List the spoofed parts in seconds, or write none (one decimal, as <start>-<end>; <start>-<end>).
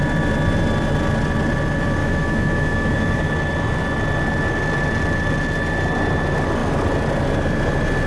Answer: 2.0-3.3